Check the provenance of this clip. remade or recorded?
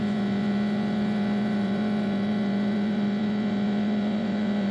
remade